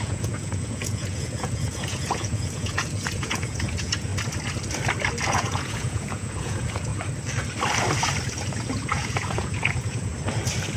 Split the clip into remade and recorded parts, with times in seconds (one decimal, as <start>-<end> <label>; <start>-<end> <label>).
0.0-4.1 remade; 4.1-5.3 recorded; 5.3-6.9 remade; 6.9-8.6 recorded; 8.6-10.1 remade; 10.1-10.8 recorded